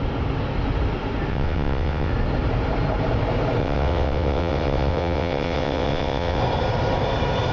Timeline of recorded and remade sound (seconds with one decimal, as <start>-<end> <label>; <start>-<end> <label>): 0.0-1.3 recorded; 1.3-2.1 remade; 2.1-3.6 recorded; 3.6-6.4 remade; 6.4-7.5 recorded